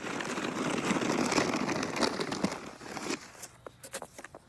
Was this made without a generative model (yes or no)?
yes